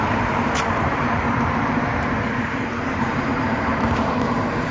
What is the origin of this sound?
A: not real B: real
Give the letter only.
A